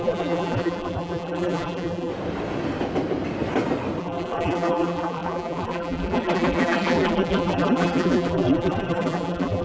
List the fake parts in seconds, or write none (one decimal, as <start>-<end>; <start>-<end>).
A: 0.0-2.1; 4.0-9.6